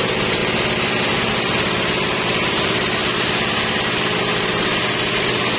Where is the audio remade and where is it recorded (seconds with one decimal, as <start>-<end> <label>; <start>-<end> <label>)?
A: 0.0-0.4 remade; 0.4-1.3 recorded; 1.3-3.0 remade; 3.0-4.2 recorded; 4.2-5.6 remade